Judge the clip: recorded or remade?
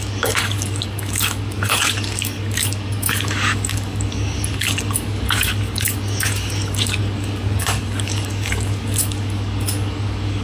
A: remade